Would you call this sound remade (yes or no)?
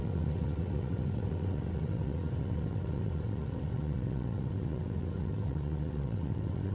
yes